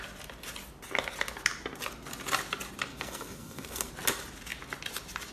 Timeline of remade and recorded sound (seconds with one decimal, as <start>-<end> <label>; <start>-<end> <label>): 0.0-2.9 recorded; 2.9-3.9 remade; 3.9-5.3 recorded